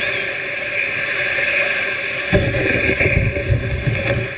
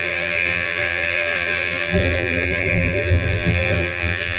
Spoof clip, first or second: second